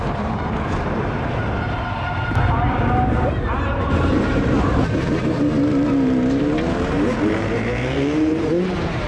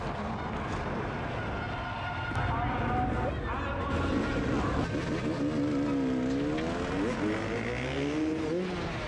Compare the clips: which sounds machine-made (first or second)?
first